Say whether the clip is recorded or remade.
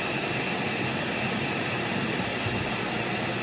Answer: recorded